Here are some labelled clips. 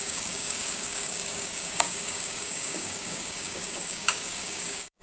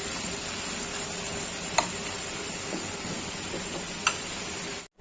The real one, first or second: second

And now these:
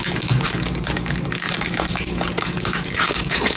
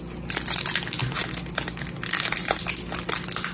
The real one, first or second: second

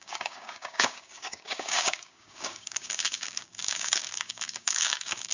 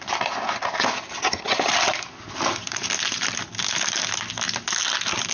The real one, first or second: second